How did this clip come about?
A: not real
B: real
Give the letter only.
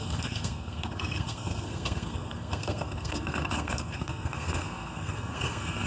A